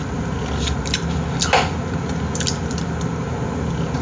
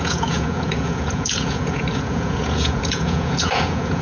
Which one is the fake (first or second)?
second